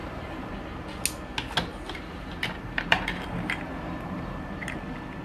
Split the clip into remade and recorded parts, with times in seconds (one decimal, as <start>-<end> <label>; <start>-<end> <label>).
0.0-0.5 remade; 0.5-1.7 recorded; 1.7-4.5 remade; 4.5-5.2 recorded